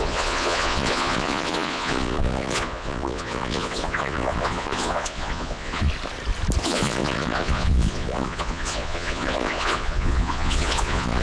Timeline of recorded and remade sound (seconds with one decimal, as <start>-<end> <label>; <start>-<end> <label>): 0.0-5.9 remade; 5.9-6.6 recorded; 6.6-11.2 remade